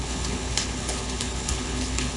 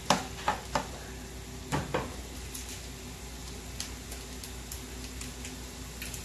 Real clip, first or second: second